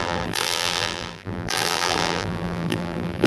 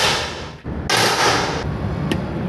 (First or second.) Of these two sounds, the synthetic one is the first